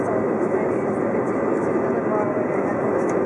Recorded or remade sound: recorded